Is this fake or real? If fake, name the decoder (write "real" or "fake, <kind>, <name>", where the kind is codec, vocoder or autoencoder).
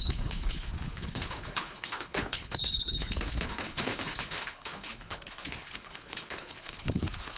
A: fake, codec, HILCodec